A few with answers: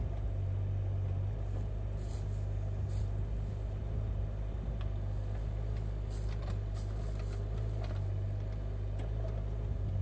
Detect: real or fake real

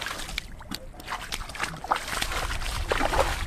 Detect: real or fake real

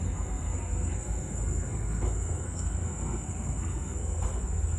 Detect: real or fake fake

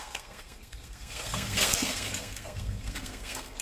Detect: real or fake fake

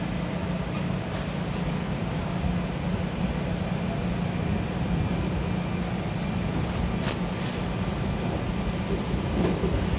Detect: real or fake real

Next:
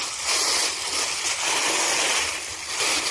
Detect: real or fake real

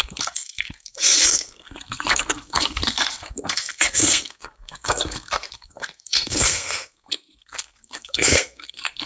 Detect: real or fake fake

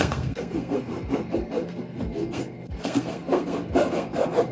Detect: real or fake fake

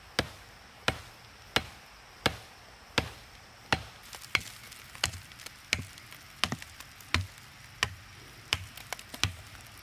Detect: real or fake real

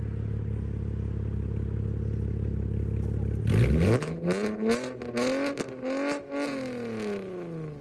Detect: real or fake real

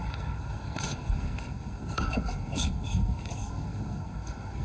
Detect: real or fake fake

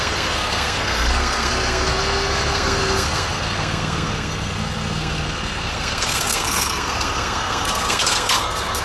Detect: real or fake fake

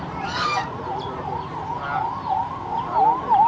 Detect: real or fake real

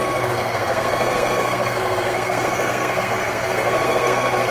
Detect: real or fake fake